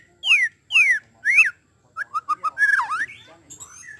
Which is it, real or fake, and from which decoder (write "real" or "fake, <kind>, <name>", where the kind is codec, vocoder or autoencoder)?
real